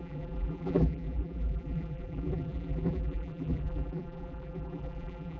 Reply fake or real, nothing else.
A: fake